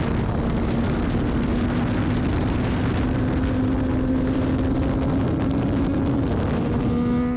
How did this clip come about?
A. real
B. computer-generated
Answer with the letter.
A